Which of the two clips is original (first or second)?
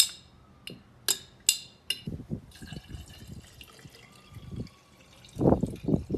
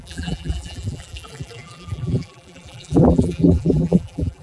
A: first